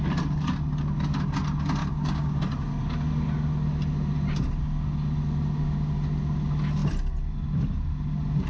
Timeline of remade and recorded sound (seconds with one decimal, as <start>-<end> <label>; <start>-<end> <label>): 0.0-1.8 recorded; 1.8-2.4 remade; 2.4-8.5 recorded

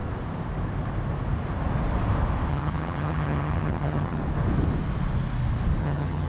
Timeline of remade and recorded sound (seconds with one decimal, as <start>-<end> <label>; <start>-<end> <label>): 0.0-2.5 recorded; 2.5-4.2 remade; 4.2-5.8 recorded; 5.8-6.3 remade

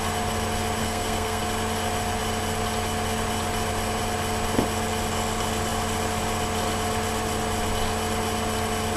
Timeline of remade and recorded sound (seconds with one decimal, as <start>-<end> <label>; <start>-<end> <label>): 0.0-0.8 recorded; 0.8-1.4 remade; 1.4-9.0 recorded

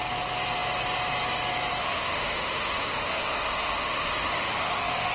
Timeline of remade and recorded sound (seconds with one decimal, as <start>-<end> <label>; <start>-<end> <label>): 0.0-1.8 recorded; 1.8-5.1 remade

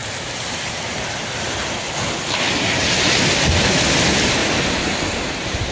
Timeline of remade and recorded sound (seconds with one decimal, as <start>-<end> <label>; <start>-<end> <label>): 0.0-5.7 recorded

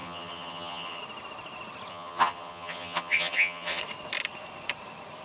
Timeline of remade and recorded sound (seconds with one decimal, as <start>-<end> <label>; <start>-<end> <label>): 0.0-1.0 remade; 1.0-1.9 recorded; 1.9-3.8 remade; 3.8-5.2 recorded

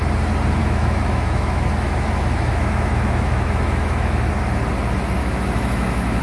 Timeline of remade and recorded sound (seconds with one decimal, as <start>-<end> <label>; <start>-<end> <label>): 0.0-0.6 recorded; 0.6-4.3 remade; 4.3-5.2 recorded; 5.2-6.2 remade

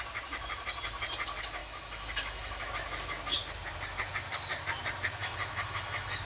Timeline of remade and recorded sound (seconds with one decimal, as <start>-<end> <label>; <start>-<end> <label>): 0.0-1.6 recorded; 1.6-2.7 remade; 2.7-5.2 recorded; 5.2-6.2 remade